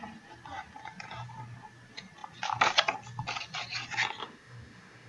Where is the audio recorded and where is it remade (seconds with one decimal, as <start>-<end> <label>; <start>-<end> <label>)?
0.0-4.2 recorded; 4.2-5.1 remade